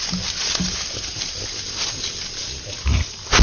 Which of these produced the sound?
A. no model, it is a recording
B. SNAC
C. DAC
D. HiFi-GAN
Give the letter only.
A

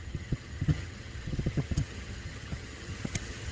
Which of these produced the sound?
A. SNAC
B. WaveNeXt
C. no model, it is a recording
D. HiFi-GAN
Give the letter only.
D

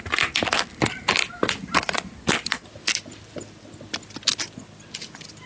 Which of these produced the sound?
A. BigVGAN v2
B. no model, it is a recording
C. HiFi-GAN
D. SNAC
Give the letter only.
B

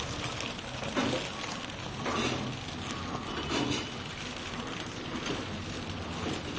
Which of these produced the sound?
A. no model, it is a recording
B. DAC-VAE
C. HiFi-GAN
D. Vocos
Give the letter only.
A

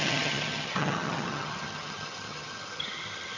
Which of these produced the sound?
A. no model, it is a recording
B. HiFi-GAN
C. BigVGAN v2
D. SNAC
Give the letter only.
B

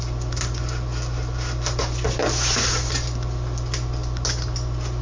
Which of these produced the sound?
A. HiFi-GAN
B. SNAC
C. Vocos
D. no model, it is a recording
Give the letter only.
D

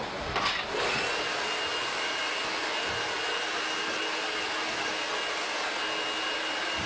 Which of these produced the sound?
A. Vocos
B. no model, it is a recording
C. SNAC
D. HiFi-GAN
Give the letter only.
B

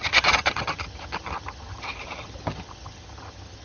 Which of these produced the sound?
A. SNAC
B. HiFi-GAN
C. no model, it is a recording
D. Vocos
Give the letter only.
B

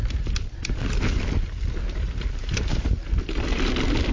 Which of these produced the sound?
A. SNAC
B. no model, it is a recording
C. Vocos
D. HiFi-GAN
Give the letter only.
B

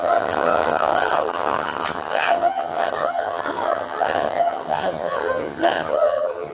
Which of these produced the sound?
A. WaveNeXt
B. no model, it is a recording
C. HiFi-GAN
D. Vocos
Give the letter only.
C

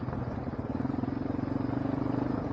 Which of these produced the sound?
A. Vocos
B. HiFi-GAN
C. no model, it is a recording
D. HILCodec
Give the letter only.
C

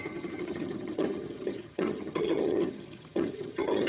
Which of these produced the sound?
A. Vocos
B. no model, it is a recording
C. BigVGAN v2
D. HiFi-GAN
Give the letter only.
D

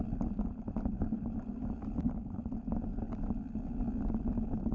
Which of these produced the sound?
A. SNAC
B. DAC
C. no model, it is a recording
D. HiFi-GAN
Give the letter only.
C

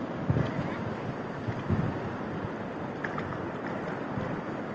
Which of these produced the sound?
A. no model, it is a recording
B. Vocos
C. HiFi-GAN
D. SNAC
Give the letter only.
A